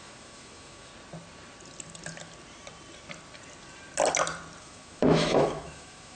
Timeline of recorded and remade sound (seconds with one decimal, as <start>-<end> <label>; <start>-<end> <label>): 0.0-0.9 remade; 0.9-4.6 recorded; 4.6-6.1 remade